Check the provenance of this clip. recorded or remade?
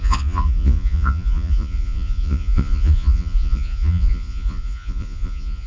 remade